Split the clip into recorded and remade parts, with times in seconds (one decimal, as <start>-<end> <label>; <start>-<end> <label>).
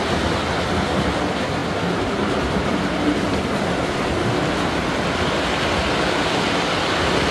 0.0-7.3 recorded